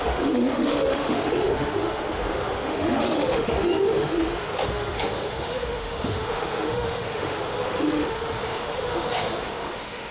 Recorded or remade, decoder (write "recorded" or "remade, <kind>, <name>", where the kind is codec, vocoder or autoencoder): remade, autoencoder, DAC-VAE